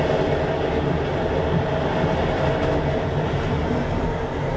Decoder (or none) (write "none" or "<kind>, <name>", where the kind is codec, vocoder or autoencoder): none